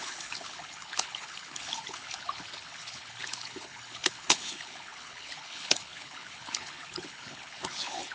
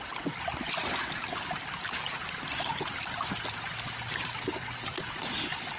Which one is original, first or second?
second